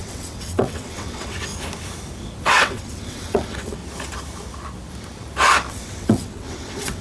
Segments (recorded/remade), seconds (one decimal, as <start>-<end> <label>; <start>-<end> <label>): 0.0-1.5 remade; 1.5-2.4 recorded; 2.4-3.8 remade; 3.8-5.7 recorded; 5.7-7.0 remade